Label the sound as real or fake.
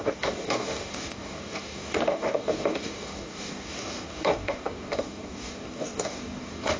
fake